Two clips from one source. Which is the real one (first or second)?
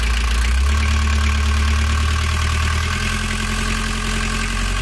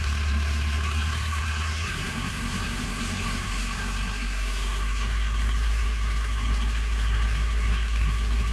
first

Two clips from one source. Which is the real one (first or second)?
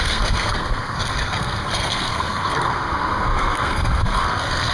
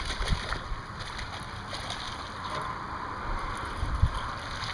second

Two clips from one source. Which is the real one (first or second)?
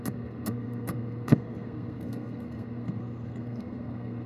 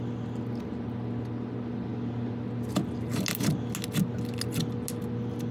second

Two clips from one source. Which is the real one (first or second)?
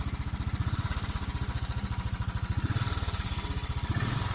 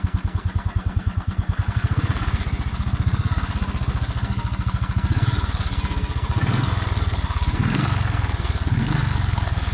first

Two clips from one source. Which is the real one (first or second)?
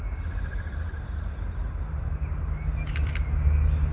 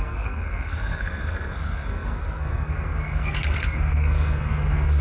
first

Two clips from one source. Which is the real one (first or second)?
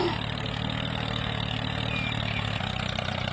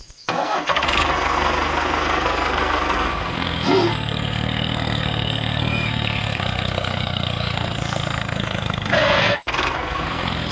first